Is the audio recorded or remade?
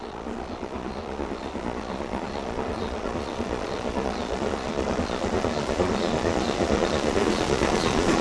remade